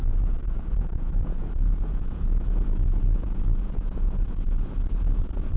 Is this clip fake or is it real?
fake